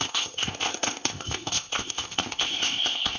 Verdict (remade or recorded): remade